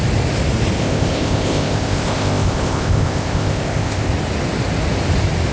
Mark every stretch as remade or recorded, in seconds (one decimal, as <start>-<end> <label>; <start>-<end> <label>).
0.0-0.8 recorded; 0.8-4.1 remade; 4.1-5.5 recorded